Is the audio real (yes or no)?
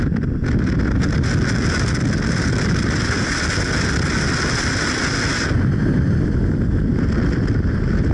yes